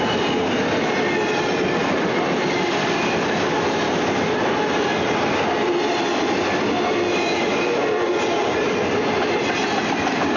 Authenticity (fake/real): real